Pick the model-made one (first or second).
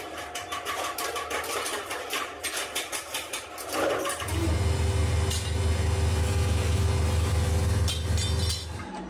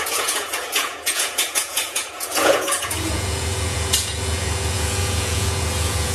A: second